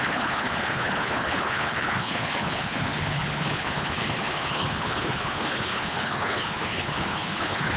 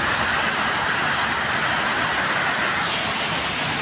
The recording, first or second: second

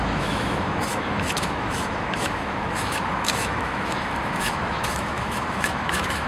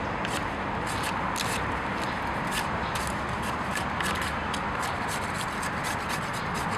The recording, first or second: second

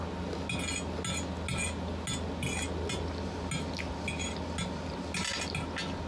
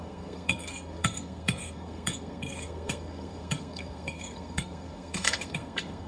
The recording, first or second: first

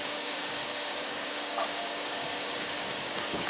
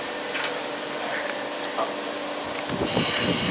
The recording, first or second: second